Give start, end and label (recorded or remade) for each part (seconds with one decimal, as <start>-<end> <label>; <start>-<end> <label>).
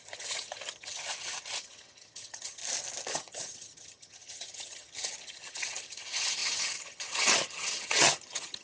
0.0-2.6 remade; 2.6-3.1 recorded; 3.1-8.6 remade